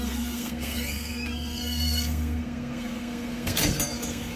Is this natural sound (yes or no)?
no